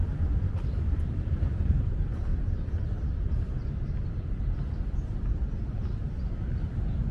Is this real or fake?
fake